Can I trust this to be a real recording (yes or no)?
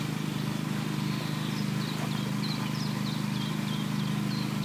yes